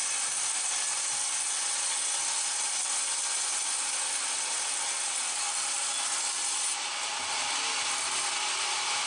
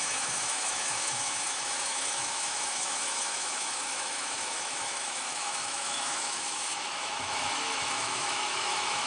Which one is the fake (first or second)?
second